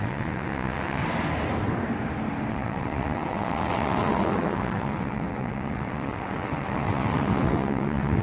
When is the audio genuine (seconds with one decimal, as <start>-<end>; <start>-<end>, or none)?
1.0-2.5